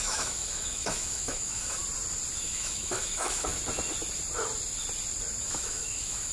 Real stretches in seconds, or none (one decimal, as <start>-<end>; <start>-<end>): 1.8-2.4; 3.5-5.4